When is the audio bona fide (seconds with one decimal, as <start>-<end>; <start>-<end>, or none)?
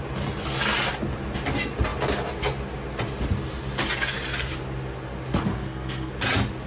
0.0-5.5; 6.1-6.7